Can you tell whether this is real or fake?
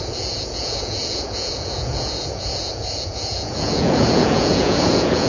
fake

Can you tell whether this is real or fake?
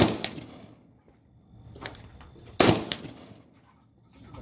real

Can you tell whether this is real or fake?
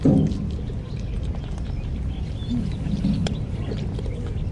real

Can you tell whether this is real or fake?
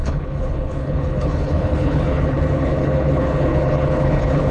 fake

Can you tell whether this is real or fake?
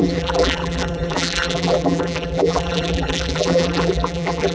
fake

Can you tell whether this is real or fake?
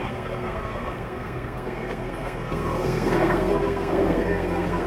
fake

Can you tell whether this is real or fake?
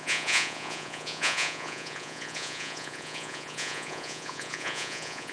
fake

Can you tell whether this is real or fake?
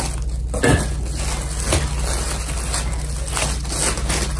real